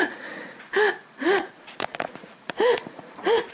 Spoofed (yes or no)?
yes